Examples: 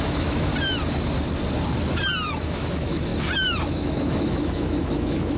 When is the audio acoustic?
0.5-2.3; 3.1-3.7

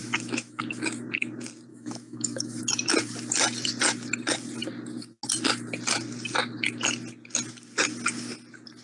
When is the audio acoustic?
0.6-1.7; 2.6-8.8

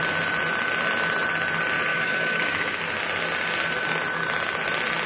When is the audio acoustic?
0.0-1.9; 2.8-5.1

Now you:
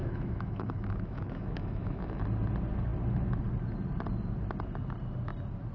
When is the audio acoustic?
2.2-5.7

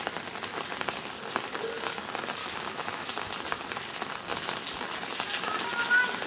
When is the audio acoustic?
0.0-2.4; 3.1-6.3

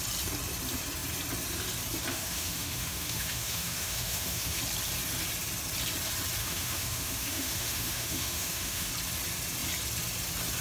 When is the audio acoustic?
0.0-2.1; 4.6-6.4; 8.9-10.6

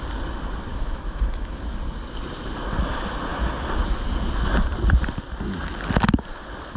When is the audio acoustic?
0.0-0.7; 1.6-6.8